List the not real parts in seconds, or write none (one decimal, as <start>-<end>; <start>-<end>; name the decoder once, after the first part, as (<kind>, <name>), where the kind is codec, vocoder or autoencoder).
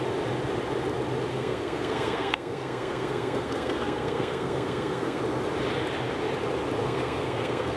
1.3-5.2 (codec, SNAC); 6.8-7.8